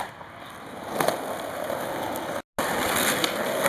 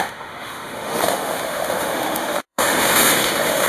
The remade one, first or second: second